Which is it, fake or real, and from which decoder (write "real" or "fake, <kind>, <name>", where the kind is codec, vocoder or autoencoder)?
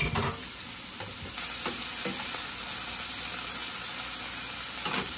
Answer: real